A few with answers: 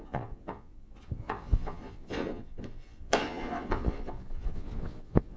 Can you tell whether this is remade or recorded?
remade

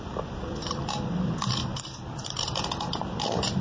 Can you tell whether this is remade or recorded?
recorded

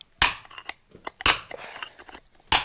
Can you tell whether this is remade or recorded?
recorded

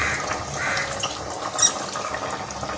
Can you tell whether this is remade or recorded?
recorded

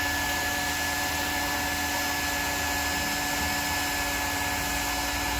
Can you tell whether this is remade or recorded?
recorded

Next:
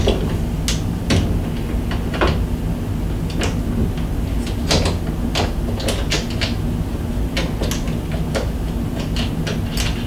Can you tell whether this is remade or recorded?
recorded